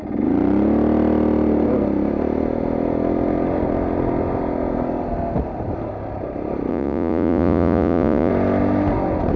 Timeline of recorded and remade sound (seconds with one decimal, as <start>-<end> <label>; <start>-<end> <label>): 0.0-6.7 recorded; 6.7-8.3 remade; 8.3-9.4 recorded